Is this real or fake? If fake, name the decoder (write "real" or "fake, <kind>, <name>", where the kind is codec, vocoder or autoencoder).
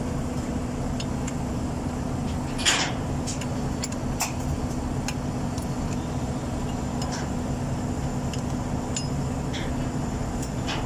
real